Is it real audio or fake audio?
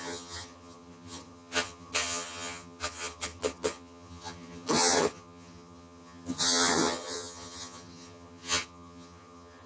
fake